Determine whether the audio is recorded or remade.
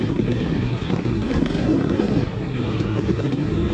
remade